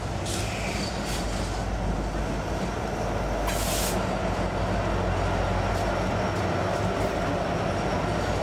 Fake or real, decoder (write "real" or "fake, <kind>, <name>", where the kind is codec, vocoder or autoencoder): real